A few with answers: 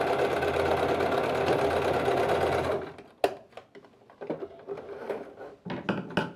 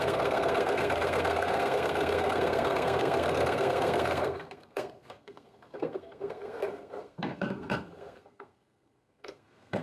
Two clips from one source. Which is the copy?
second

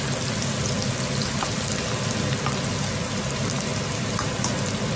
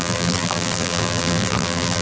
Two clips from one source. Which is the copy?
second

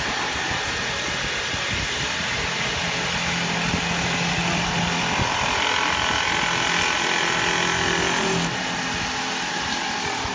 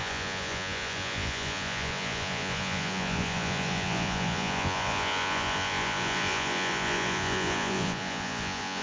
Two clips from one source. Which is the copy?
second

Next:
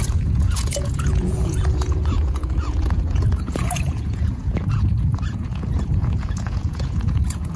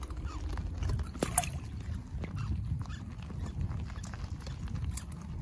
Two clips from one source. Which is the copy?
first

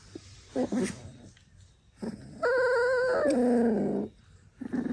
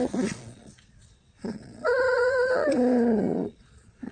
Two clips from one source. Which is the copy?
second